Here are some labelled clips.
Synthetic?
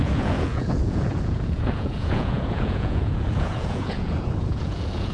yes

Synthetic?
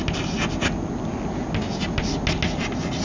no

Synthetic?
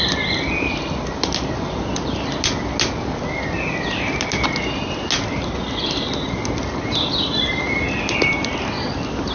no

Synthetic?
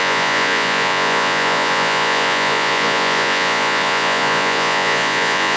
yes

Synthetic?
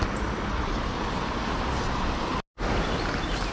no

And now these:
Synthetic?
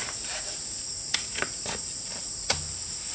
no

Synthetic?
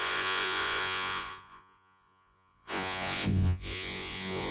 yes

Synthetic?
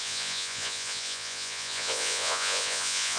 yes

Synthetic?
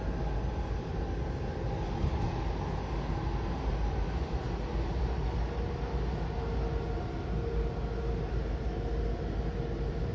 no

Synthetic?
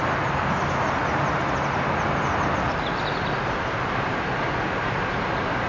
no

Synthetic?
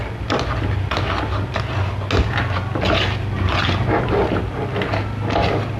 no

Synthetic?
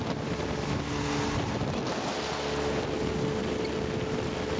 no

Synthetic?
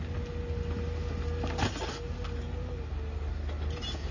no